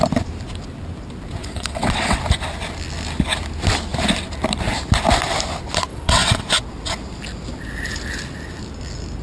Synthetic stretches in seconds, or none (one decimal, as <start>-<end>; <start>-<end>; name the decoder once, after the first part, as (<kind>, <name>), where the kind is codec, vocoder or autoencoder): 1.4-2.2 (vocoder, WaveNeXt); 5.9-6.4